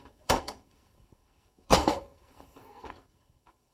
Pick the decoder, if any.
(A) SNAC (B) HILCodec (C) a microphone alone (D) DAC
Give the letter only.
A